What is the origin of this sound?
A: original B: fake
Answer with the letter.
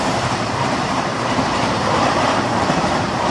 B